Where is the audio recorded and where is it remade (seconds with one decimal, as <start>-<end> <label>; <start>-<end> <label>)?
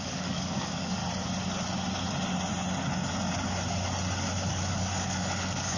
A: 0.0-1.0 remade; 1.0-4.5 recorded; 4.5-5.8 remade